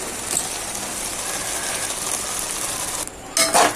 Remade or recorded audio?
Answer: recorded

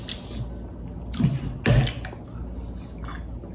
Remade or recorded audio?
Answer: recorded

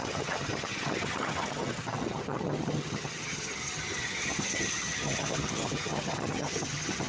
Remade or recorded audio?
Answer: remade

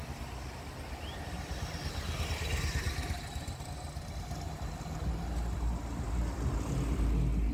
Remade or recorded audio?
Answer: recorded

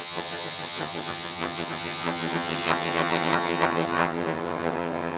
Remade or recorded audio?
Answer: remade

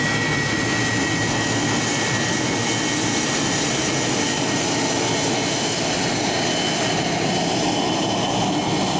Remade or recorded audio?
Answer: recorded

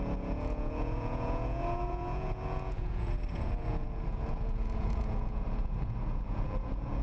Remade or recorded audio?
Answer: remade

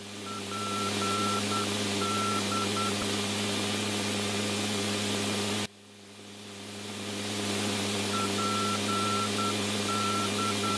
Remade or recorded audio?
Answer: recorded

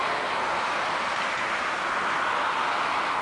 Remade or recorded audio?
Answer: recorded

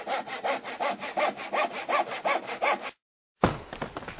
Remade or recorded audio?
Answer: recorded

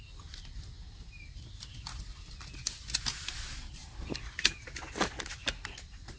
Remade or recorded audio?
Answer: recorded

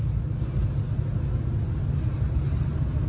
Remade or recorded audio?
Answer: recorded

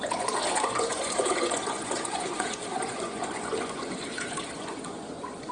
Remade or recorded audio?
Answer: remade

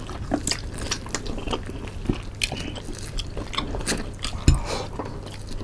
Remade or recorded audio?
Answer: recorded